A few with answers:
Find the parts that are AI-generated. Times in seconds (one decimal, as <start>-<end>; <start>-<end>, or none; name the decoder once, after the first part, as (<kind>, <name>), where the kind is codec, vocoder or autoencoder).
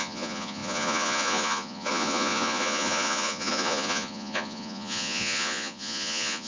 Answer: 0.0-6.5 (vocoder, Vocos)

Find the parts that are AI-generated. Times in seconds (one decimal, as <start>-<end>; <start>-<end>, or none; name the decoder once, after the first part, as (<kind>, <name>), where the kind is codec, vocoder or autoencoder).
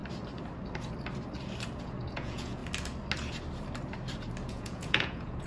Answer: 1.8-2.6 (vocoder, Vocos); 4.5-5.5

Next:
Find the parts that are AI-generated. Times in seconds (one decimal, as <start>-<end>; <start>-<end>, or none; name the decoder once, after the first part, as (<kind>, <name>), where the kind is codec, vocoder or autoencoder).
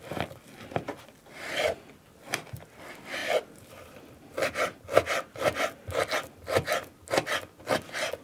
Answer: none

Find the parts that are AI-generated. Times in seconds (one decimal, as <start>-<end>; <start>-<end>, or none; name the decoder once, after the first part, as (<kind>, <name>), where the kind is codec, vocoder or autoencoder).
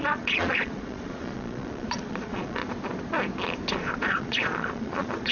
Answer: 0.0-2.6 (vocoder, Vocos); 3.7-5.3